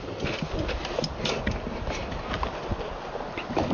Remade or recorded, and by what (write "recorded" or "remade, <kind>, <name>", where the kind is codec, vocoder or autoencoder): recorded